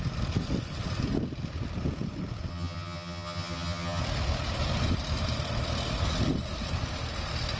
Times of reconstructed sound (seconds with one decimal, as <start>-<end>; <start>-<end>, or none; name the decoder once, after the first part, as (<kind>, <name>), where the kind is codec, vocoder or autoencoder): 2.5-4.0 (vocoder, HiFi-GAN)